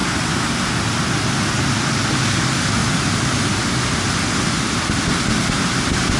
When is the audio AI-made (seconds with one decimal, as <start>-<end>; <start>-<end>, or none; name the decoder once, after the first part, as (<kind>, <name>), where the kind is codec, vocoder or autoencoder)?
none